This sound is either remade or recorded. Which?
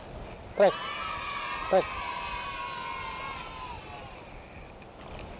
recorded